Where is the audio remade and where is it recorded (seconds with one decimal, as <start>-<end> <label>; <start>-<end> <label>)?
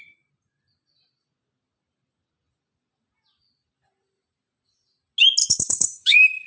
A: 0.0-5.4 recorded; 5.4-6.5 remade